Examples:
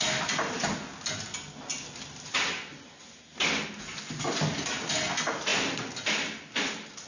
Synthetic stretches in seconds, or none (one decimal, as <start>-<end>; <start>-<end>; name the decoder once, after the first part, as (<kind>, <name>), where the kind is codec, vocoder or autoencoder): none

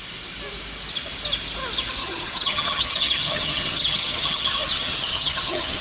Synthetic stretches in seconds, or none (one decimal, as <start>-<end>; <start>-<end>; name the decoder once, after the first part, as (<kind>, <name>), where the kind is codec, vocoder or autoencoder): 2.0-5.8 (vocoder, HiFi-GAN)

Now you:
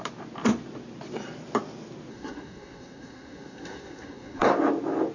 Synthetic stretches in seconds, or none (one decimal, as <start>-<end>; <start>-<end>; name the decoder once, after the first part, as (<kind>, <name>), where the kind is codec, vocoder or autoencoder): 2.1-4.5 (codec, SNAC)

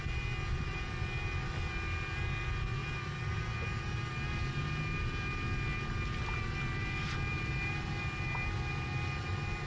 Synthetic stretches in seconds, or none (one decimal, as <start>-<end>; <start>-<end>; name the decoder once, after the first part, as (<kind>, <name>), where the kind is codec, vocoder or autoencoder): 6.8-7.7 (vocoder, BigVGAN v2)

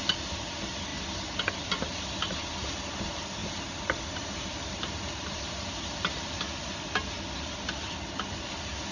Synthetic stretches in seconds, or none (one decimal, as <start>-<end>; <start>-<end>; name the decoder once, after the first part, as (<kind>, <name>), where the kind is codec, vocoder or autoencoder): 3.4-6.4 (vocoder, BigVGAN v2)